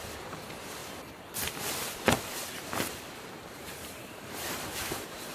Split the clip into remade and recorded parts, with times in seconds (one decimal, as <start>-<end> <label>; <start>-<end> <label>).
0.0-0.8 remade; 0.8-2.5 recorded; 2.5-5.3 remade